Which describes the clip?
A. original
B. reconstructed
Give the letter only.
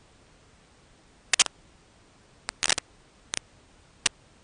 A